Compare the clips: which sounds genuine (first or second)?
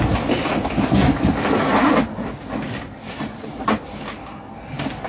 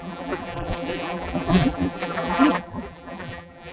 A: first